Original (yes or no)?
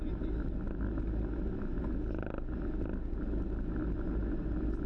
yes